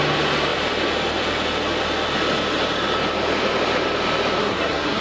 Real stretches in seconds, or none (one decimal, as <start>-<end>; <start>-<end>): 0.0-4.4